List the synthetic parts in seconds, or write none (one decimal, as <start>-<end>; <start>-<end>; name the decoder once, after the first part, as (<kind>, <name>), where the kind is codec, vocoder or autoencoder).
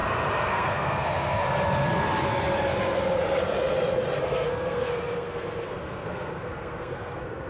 0.5-1.4 (codec, SNAC); 4.2-7.5